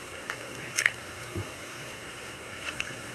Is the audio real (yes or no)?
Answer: no